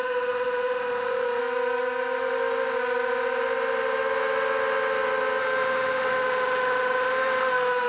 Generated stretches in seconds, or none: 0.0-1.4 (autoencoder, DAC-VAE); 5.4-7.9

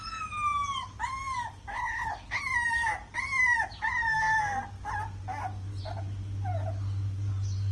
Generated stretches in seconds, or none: 1.7-2.4 (codec, HILCodec)

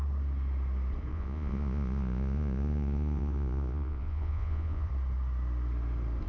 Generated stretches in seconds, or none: 1.1-4.9 (vocoder, Vocos)

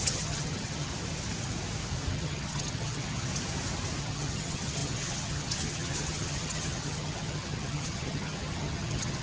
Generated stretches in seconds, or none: 0.0-0.9 (vocoder, HiFi-GAN); 2.1-3.3; 4.0-9.2

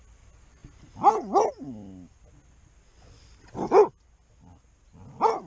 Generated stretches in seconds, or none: none

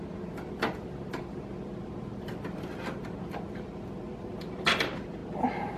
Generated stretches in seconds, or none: 0.0-5.2 (vocoder, BigVGAN v2)